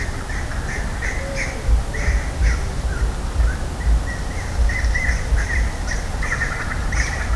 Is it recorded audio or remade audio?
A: recorded